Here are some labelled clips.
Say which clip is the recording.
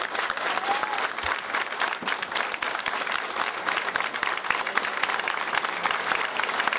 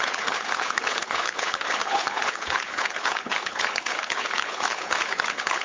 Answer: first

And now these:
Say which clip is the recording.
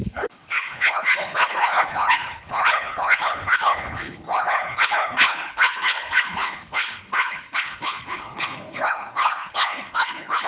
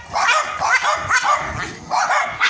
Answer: second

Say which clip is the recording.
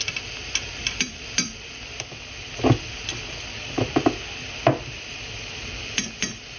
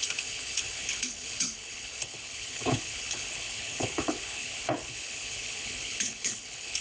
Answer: first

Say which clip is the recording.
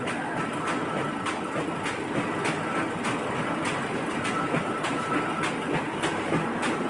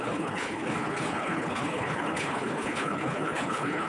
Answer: first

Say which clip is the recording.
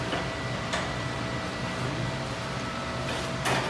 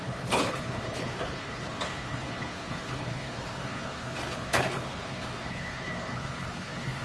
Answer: first